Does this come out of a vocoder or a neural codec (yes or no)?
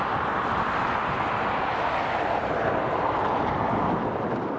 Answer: no